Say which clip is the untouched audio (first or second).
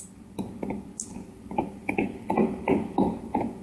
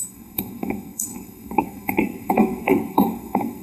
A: first